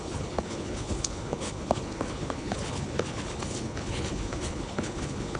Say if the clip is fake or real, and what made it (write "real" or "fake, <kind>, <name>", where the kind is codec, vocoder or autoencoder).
fake, codec, HILCodec